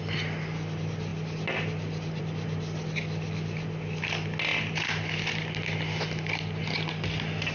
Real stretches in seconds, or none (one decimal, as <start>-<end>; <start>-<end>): 0.0-1.1; 2.2-7.5

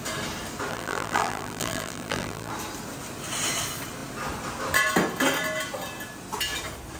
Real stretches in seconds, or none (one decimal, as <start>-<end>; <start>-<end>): 0.0-0.7; 2.5-7.0

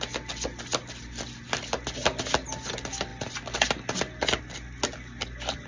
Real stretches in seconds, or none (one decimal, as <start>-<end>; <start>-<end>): 0.0-5.7

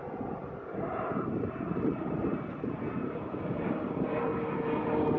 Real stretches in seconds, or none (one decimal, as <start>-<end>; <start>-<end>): 0.0-0.7; 1.1-1.7; 2.3-3.1; 4.3-5.2

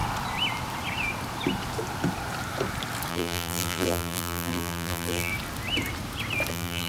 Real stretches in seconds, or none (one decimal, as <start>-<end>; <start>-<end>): 0.0-3.1; 5.3-6.5

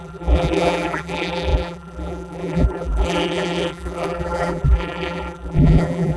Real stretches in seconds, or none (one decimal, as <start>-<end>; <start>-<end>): none

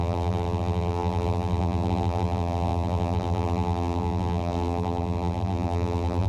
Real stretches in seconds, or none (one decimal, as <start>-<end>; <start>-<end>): none